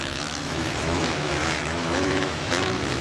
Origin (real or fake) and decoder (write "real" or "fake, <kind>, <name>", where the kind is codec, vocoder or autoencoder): fake, autoencoder, DAC-VAE